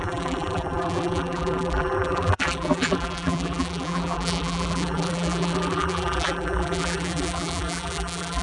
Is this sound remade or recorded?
remade